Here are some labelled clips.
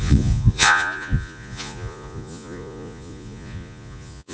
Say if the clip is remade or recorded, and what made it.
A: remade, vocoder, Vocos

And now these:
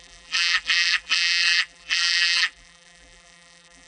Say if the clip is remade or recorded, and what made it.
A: remade, vocoder, BigVGAN v2